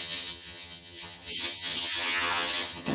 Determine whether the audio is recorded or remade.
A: remade